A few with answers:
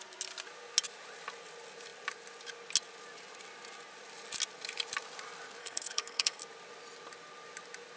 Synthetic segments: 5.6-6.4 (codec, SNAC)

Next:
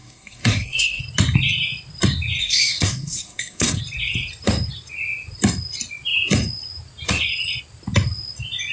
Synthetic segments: 0.0-1.0 (codec, SNAC); 2.4-3.8

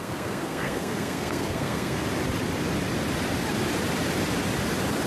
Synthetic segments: 0.0-2.0 (codec, SNAC)